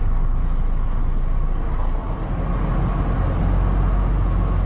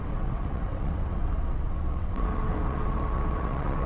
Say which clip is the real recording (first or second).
first